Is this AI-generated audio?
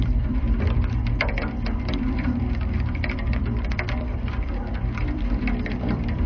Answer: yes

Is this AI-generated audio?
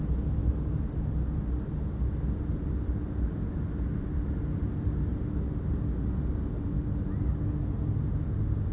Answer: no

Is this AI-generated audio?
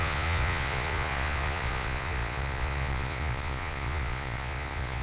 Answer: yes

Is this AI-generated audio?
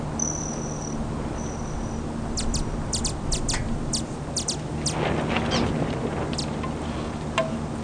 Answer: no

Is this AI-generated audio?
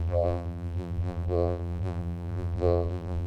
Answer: yes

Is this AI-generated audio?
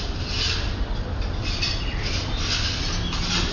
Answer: no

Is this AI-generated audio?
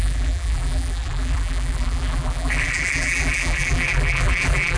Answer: yes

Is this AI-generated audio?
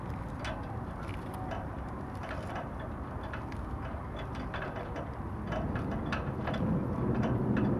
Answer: no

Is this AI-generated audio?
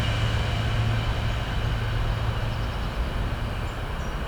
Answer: no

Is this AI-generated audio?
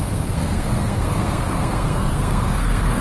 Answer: yes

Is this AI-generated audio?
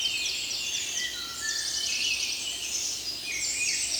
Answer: no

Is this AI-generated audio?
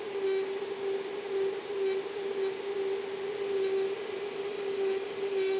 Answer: no